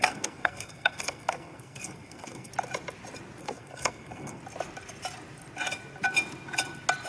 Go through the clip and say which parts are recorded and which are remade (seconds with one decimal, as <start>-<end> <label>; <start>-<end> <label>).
0.0-2.5 remade; 2.5-3.4 recorded; 3.4-4.4 remade; 4.4-7.1 recorded